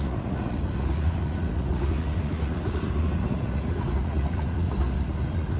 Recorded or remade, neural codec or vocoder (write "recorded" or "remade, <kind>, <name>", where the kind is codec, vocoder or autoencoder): remade, vocoder, Vocos